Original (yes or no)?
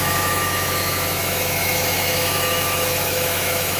no